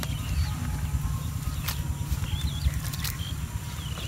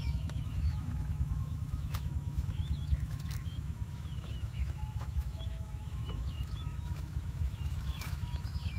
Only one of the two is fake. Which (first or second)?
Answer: second